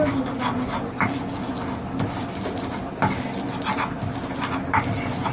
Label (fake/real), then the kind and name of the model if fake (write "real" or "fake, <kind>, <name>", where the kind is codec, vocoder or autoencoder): real